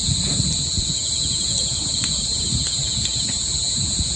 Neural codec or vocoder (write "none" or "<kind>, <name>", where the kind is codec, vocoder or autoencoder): vocoder, Vocos